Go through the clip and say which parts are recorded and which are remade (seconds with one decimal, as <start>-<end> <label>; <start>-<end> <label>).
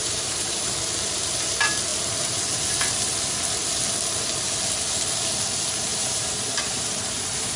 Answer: 0.0-0.6 remade; 0.6-5.9 recorded; 5.9-7.6 remade